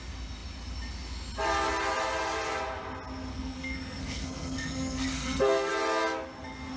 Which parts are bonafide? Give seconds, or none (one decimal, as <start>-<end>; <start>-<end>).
0.0-3.3; 5.7-6.8